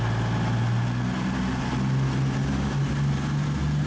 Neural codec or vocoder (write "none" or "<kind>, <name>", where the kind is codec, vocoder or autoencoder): none